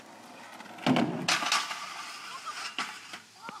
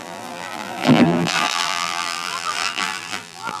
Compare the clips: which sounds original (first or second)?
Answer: first